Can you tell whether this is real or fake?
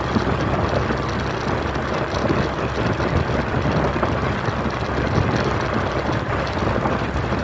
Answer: real